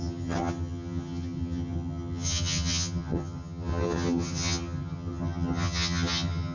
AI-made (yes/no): yes